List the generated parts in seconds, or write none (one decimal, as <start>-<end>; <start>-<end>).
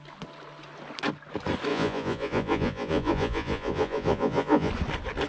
1.7-4.7